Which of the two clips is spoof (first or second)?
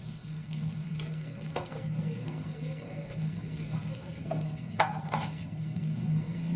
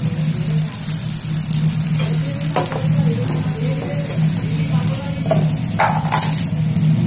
first